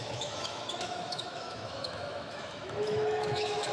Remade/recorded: remade